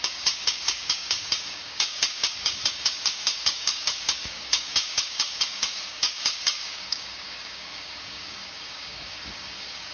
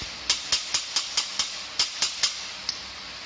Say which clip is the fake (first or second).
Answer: first